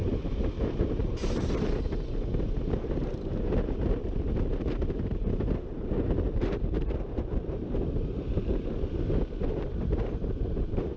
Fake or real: fake